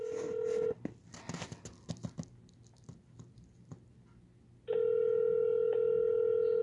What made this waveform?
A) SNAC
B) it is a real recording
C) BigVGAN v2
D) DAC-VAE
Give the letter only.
B